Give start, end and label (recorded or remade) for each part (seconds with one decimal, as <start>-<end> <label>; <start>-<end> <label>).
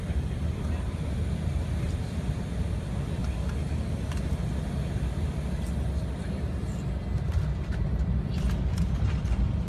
0.0-3.2 remade; 3.2-7.2 recorded; 7.2-9.7 remade